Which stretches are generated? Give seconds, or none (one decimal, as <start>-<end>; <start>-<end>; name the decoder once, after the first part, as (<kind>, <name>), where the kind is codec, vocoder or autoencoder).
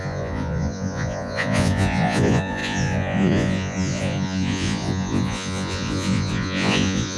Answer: 0.0-7.2 (vocoder, Vocos)